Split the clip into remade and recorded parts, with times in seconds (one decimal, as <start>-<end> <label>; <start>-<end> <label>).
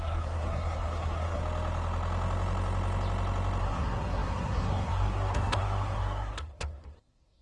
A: 0.0-1.4 remade; 1.4-3.6 recorded; 3.6-7.4 remade